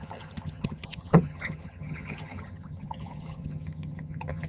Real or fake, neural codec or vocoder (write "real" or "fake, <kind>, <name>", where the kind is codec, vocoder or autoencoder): fake, vocoder, HiFi-GAN